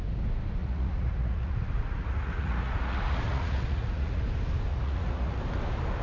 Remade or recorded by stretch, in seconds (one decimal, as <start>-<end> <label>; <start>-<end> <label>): 0.0-0.6 recorded; 0.6-4.2 remade; 4.2-4.7 recorded; 4.7-5.4 remade; 5.4-6.0 recorded